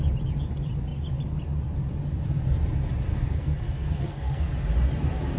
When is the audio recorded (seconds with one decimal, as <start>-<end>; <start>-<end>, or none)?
0.0-3.1; 4.5-5.4